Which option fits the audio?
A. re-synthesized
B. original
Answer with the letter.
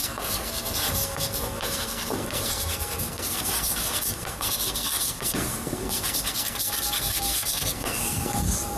A